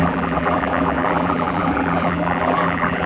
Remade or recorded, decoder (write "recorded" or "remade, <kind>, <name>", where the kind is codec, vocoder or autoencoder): remade, vocoder, BigVGAN v2